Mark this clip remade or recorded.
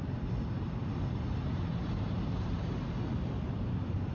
remade